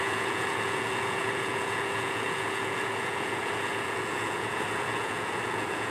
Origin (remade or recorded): remade